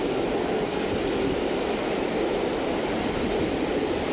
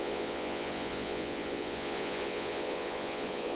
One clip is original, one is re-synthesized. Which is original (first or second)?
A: first